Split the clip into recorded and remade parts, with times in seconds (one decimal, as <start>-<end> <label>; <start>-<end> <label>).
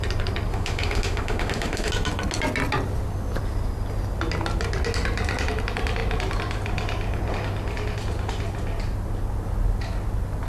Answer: 0.0-0.5 recorded; 0.5-1.9 remade; 1.9-10.5 recorded